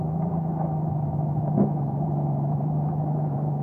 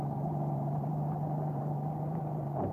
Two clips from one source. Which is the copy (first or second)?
first